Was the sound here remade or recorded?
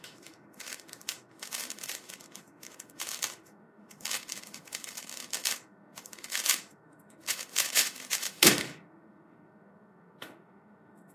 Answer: remade